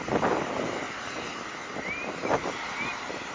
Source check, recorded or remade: recorded